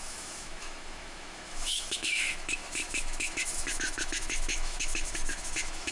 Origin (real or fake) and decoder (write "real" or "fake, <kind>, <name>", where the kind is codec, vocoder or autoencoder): fake, autoencoder, DAC-VAE